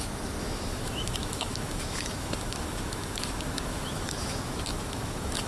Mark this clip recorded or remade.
remade